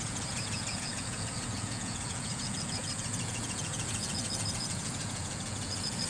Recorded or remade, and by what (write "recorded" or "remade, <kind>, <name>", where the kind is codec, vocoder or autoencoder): remade, vocoder, Vocos